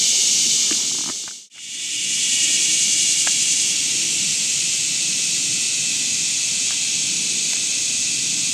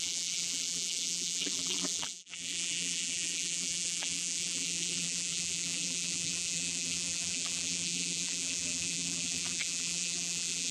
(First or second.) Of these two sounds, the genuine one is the first